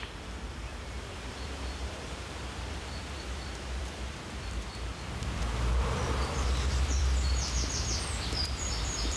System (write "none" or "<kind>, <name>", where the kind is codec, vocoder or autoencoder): vocoder, BigVGAN v2